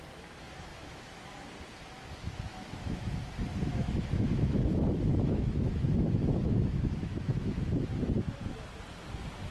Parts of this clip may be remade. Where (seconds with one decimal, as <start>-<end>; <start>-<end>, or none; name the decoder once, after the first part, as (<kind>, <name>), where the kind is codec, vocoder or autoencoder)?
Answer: 0.7-1.5 (autoencoder, DAC-VAE); 2.5-3.1; 3.7-8.0